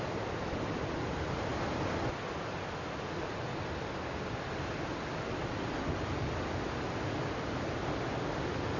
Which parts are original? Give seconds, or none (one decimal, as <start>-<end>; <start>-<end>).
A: 0.0-8.8